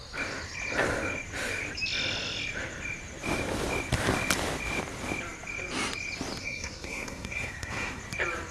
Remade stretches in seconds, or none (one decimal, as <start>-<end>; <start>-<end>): 6.4-8.0